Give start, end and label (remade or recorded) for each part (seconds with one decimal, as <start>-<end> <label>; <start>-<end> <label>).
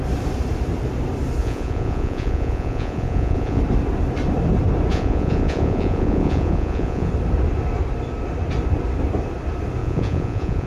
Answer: 0.0-1.4 recorded; 1.4-3.6 remade; 3.6-4.9 recorded; 4.9-7.1 remade; 7.1-9.8 recorded; 9.8-10.7 remade